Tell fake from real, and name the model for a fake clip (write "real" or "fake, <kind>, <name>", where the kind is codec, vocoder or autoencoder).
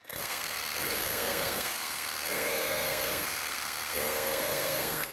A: fake, codec, SNAC